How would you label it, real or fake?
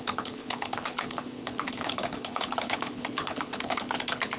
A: fake